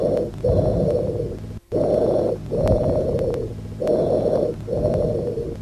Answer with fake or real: real